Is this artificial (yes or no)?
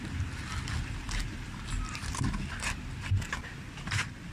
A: no